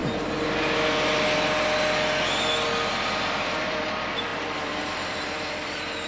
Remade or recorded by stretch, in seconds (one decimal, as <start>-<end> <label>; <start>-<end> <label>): 0.0-2.9 recorded; 2.9-6.1 remade